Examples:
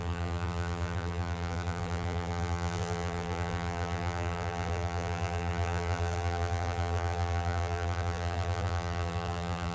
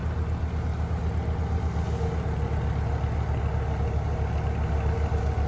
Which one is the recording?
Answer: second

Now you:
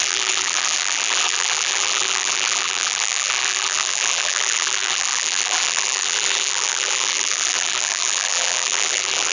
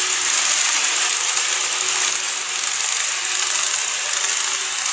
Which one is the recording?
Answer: second